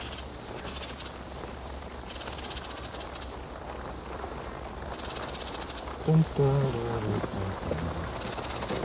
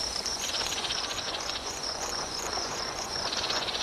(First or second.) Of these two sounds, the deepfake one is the second